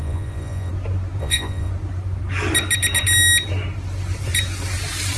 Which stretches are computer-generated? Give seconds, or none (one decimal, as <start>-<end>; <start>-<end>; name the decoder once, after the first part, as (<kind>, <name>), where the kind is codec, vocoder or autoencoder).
0.0-0.7 (vocoder, Vocos); 1.2-1.7

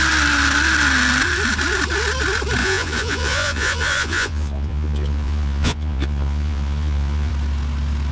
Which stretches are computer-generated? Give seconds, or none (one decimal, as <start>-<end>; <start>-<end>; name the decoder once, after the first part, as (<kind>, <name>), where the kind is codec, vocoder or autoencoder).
2.6-7.3 (vocoder, Vocos)

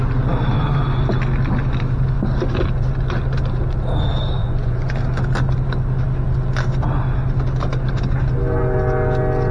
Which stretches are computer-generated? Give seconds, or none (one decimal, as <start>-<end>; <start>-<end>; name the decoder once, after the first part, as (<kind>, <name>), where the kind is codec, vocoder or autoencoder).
4.4-4.9 (vocoder, Vocos)

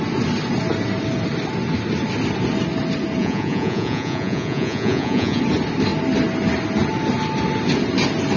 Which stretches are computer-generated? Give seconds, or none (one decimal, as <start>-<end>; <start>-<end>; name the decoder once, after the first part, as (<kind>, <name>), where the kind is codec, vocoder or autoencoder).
3.2-5.4 (vocoder, Vocos)

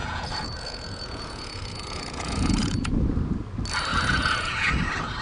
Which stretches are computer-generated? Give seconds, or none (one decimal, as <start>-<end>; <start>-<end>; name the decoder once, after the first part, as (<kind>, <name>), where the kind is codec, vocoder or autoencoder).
0.0-2.9 (vocoder, Vocos); 3.9-4.7

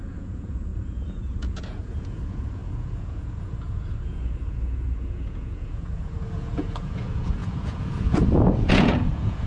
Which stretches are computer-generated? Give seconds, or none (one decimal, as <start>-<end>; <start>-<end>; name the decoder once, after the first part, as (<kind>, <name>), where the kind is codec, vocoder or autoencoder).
0.0-9.5 (vocoder, Vocos)